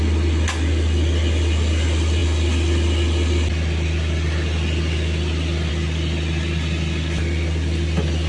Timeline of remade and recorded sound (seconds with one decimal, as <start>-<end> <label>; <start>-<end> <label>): 0.0-8.3 recorded